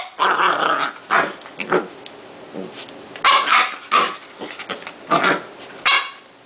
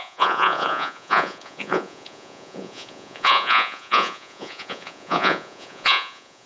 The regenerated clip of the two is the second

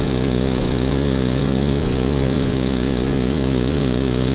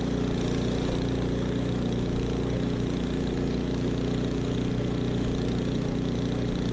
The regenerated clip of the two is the first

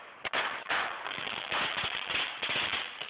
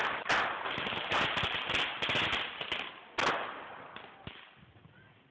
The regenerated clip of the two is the first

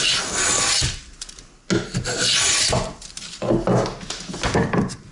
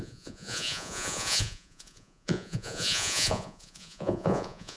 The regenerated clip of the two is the second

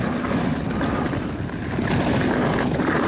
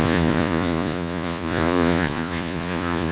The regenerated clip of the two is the second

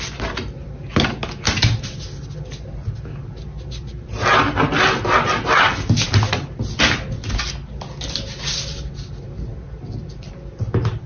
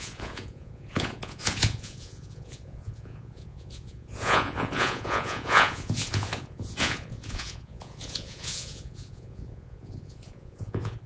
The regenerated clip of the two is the second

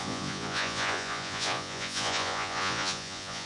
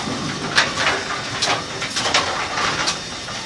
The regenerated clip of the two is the first